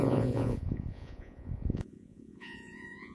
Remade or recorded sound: remade